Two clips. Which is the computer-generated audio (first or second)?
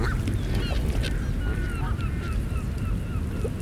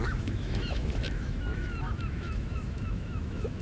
second